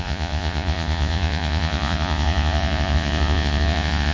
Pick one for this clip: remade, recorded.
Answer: remade